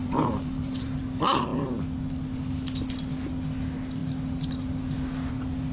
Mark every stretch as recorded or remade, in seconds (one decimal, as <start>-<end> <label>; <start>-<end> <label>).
0.0-1.0 remade; 1.0-5.7 recorded